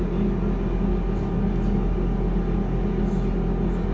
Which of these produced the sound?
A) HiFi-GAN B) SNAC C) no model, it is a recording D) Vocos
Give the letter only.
C